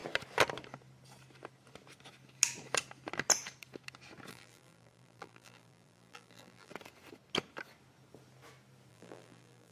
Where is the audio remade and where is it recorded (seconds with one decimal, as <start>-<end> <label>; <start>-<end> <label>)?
0.0-4.3 recorded; 4.3-6.7 remade; 6.7-8.9 recorded; 8.9-9.7 remade